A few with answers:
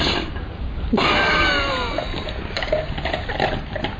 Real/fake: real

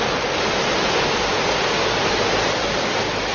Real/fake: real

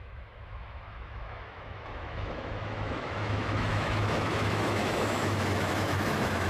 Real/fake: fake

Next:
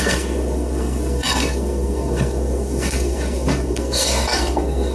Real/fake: fake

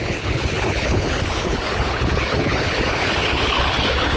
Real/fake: fake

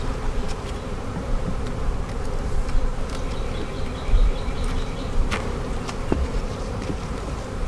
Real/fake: fake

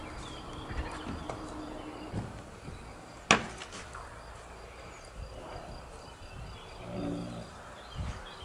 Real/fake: real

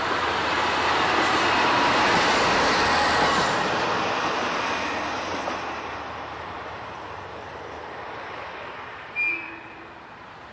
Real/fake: real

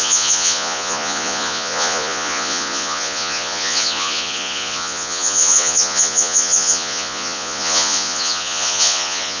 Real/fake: fake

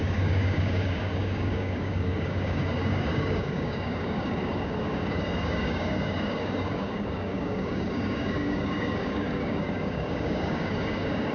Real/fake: fake